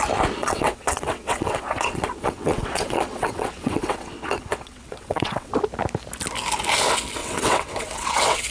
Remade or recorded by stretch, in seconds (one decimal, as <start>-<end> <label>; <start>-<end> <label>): 0.0-0.4 recorded; 0.4-5.5 remade; 5.5-7.2 recorded; 7.2-8.5 remade